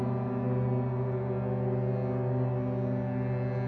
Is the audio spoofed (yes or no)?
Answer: no